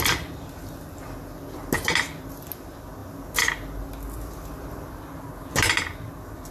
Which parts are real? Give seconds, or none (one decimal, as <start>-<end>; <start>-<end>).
0.0-6.5